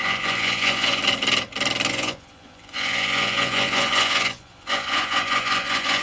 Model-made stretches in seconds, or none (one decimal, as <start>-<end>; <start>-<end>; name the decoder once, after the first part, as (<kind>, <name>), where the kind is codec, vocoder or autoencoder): 0.0-1.0 (vocoder, Vocos); 1.9-6.0